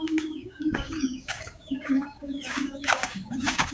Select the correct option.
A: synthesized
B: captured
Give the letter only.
A